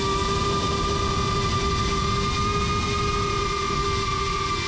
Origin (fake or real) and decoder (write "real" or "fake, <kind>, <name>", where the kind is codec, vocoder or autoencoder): real